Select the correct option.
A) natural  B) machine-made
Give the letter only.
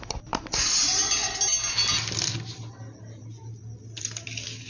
A